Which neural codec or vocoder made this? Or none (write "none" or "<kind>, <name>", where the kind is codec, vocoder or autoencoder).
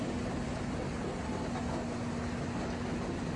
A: none